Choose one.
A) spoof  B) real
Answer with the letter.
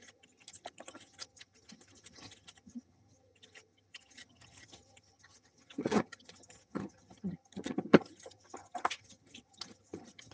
A